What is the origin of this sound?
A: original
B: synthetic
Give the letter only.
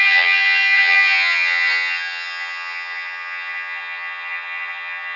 B